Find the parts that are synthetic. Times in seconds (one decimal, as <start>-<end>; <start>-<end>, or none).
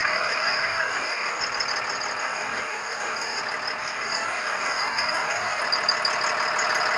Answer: 0.0-1.4; 2.2-3.4; 3.8-5.6